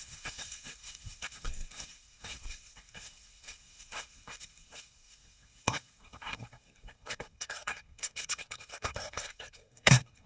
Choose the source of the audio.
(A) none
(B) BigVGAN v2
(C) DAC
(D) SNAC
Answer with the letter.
D